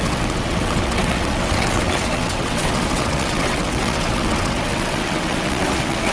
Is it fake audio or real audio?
fake